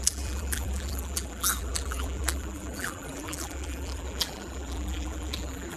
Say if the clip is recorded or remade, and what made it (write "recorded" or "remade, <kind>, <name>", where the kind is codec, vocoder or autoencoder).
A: remade, vocoder, BigVGAN v2